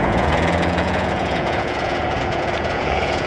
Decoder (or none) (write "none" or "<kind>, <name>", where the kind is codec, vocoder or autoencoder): vocoder, Vocos